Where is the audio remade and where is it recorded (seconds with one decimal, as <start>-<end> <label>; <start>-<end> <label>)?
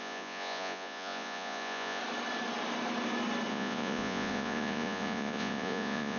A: 0.0-2.0 remade; 2.0-3.5 recorded; 3.5-6.2 remade